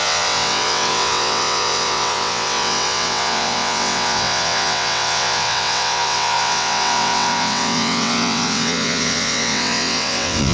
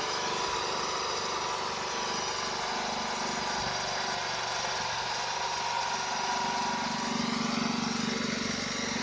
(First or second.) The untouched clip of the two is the second